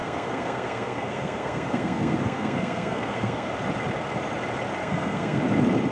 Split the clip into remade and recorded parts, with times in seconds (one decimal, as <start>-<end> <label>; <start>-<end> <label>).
0.0-3.5 remade; 3.5-4.8 recorded; 4.8-5.4 remade; 5.4-5.9 recorded